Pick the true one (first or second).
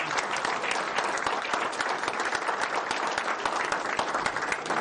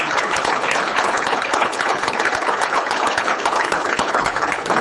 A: first